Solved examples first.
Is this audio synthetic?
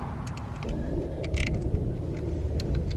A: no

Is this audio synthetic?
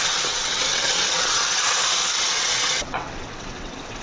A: yes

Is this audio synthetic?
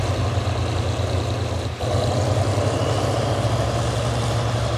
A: no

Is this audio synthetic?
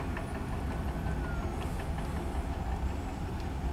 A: no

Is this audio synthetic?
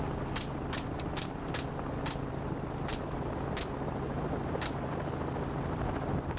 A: no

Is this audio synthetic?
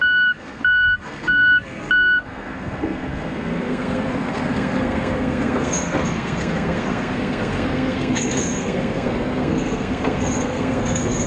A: yes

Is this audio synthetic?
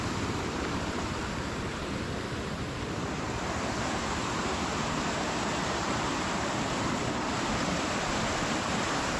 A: no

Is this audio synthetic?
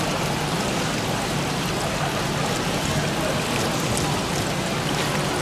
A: no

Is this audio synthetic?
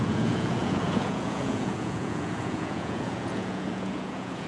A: yes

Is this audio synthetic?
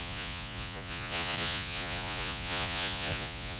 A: yes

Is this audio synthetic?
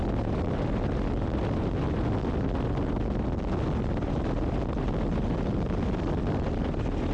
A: no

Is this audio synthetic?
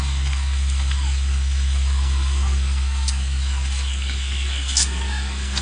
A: yes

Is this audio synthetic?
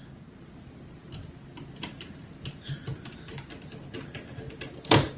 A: no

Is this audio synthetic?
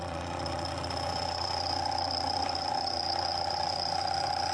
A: yes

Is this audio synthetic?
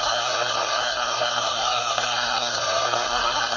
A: yes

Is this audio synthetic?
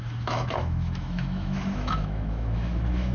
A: yes